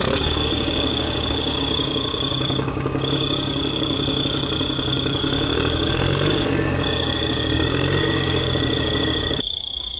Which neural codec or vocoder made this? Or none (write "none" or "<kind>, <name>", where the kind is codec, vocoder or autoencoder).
codec, DAC